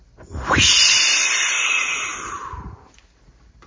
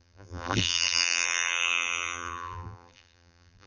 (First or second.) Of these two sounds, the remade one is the second